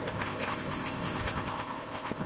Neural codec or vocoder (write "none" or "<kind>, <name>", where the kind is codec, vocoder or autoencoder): codec, ZipCodec